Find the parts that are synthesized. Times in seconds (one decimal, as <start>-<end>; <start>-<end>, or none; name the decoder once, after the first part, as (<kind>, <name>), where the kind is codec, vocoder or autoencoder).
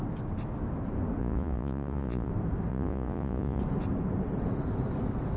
1.2-2.3 (vocoder, Vocos); 2.7-3.6